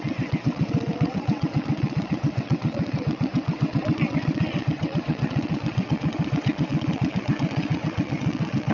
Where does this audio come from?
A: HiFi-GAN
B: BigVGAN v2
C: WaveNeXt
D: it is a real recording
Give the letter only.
C